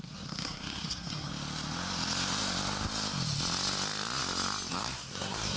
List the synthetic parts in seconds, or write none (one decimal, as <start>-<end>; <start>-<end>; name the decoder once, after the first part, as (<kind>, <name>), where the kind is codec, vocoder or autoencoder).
0.0-1.3 (codec, SNAC); 4.7-5.6